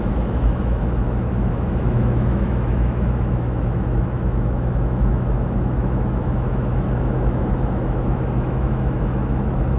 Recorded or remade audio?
remade